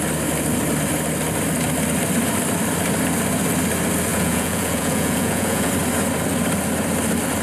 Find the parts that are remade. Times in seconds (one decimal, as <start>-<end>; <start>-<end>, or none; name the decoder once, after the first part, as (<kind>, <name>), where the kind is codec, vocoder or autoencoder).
4.1-5.7 (vocoder, Vocos)